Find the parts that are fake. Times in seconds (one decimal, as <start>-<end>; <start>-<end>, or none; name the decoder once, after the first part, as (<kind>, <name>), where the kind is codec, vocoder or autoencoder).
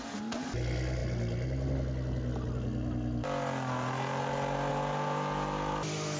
none